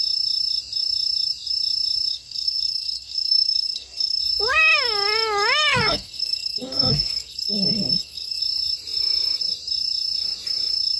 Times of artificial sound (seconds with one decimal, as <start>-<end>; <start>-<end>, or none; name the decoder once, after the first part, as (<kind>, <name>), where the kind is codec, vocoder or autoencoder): 2.1-4.2 (codec, SNAC); 5.7-8.4

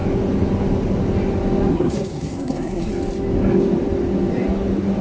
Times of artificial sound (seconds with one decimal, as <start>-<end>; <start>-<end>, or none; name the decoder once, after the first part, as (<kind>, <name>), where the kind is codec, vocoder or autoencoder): 1.7-2.9 (codec, SNAC)